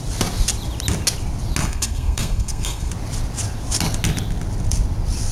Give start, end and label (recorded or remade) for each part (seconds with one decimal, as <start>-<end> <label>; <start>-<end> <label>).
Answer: 0.0-1.6 recorded; 1.6-2.9 remade; 2.9-5.3 recorded